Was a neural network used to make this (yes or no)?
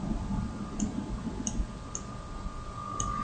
no